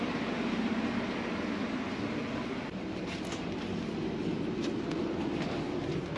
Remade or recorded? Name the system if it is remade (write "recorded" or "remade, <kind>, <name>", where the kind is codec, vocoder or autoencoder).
recorded